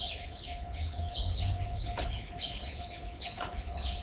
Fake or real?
fake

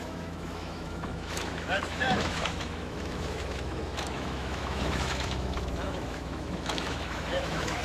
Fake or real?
fake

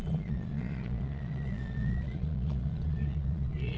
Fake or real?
fake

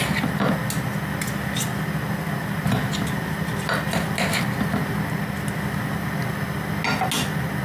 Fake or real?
real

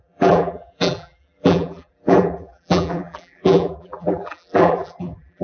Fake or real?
fake